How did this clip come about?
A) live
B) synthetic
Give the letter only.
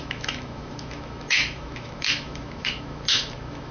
B